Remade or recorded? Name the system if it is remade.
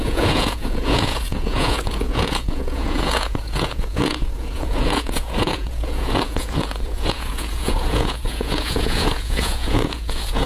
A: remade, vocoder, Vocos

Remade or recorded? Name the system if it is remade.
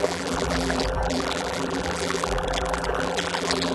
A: remade, vocoder, BigVGAN v2